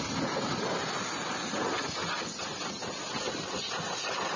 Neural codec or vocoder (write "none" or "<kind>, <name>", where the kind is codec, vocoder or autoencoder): none